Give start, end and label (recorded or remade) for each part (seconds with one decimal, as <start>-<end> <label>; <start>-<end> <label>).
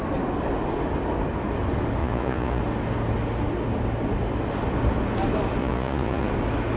0.0-2.0 recorded; 2.0-2.6 remade; 2.6-5.6 recorded; 5.6-6.3 remade; 6.3-6.8 recorded